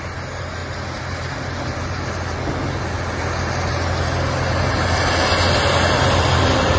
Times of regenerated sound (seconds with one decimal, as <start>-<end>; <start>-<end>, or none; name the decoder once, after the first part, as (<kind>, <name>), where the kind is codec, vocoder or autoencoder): none